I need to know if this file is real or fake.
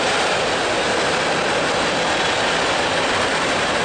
real